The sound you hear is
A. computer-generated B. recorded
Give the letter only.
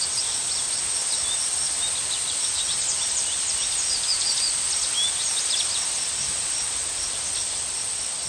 B